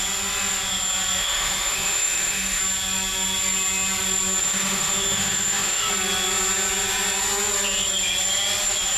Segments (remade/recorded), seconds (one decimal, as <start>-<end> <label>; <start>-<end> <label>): 0.0-1.2 recorded; 1.2-2.6 remade; 2.6-4.4 recorded; 4.4-5.9 remade; 5.9-9.0 recorded